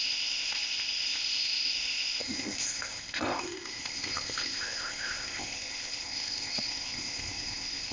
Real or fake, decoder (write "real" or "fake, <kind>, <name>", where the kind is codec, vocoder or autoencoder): fake, codec, ZipCodec